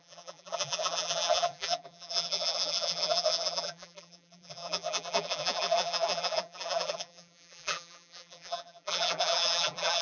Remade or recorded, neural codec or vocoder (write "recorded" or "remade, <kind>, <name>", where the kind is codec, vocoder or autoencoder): remade, vocoder, BigVGAN v2